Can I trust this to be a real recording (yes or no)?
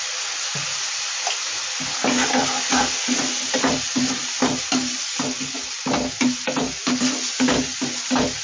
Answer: yes